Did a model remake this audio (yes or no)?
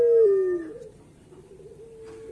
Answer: no